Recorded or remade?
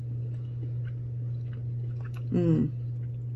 recorded